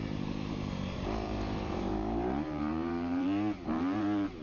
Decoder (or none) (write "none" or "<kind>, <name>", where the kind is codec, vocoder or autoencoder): vocoder, BigVGAN v2